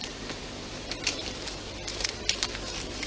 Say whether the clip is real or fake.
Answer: fake